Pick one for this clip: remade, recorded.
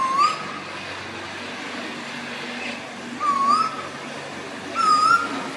recorded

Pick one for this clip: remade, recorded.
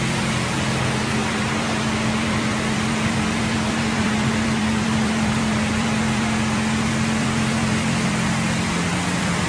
remade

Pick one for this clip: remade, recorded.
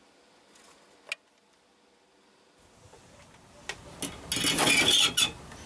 recorded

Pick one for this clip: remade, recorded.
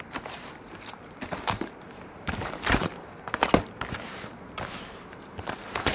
remade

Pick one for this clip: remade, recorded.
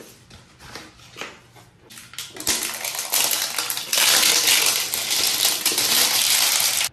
recorded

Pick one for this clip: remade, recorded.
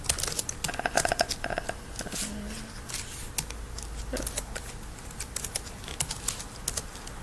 recorded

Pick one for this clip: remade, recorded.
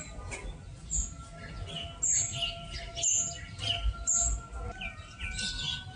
recorded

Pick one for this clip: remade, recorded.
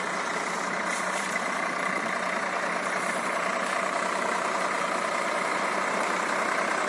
remade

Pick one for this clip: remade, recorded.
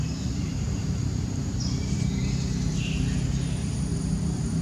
remade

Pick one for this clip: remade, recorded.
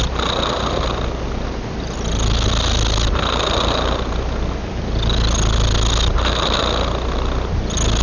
recorded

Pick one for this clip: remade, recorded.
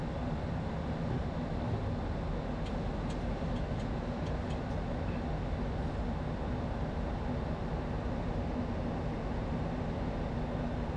recorded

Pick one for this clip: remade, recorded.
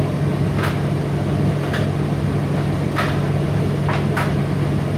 recorded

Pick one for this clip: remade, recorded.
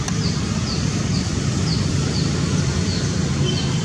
remade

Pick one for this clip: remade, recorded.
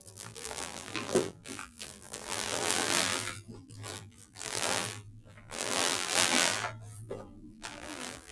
remade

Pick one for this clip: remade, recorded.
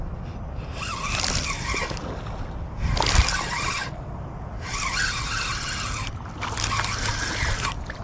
recorded